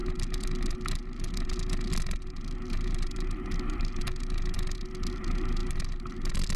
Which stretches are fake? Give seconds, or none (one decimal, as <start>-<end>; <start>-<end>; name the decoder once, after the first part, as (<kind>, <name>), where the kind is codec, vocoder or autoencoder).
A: none